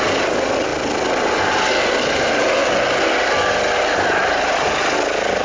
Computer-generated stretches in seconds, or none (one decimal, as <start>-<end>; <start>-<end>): none